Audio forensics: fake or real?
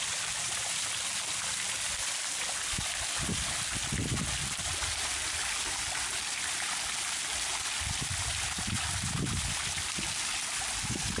real